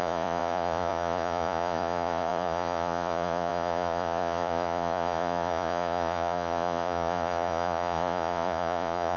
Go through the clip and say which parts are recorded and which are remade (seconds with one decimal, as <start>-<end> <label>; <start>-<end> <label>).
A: 0.0-9.2 remade